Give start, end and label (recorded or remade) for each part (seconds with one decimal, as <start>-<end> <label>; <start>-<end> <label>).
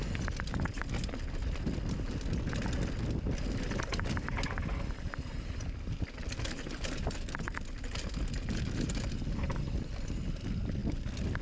0.0-11.4 recorded